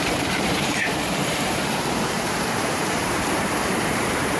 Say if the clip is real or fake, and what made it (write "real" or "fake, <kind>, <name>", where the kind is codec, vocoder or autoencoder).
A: fake, vocoder, BigVGAN v2